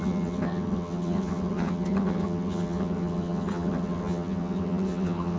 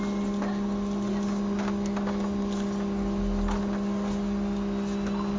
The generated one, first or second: first